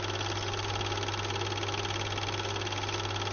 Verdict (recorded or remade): recorded